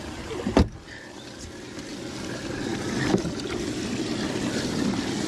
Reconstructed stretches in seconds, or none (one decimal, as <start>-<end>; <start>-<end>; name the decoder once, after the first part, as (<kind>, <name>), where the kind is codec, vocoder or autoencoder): none